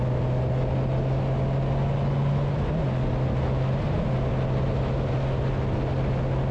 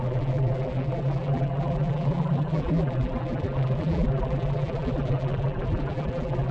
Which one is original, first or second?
first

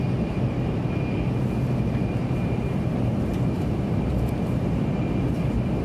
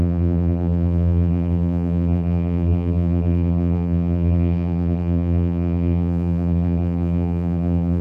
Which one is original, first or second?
first